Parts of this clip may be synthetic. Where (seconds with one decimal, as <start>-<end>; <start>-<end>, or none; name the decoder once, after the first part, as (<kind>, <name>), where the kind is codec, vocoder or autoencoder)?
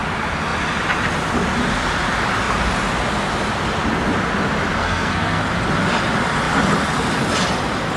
4.8-5.4 (codec, SNAC)